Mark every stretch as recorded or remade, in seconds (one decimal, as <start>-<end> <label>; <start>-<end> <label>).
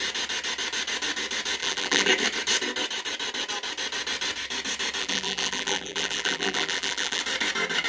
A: 0.0-1.6 recorded; 1.6-2.1 remade; 2.1-5.0 recorded; 5.0-7.2 remade; 7.2-7.9 recorded